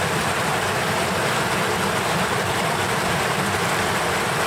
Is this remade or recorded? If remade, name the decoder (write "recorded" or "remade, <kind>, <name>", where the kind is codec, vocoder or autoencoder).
recorded